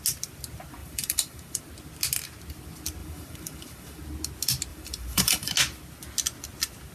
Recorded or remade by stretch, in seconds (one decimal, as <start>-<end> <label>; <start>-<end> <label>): 0.0-0.8 recorded; 0.8-1.6 remade; 1.6-3.0 recorded; 3.0-4.0 remade; 4.0-4.7 recorded; 4.7-5.5 remade; 5.5-6.9 recorded